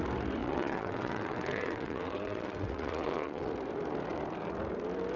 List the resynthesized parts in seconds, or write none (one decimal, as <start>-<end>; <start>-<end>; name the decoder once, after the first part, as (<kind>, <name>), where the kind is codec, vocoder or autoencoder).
0.4-3.5 (vocoder, WaveNeXt)